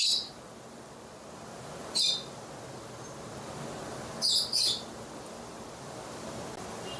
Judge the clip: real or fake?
real